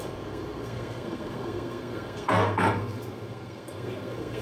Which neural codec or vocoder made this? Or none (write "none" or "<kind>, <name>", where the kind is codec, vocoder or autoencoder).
codec, SNAC